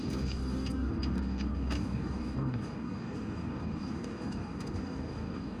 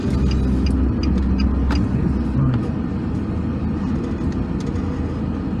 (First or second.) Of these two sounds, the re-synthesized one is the first